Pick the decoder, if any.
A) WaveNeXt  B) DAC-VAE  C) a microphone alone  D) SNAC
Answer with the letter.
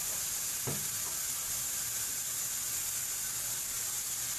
C